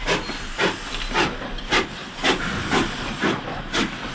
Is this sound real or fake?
real